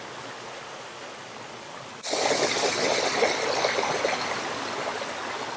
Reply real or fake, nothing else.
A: real